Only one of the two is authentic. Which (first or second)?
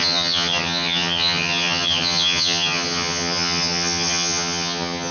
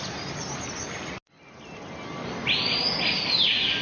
second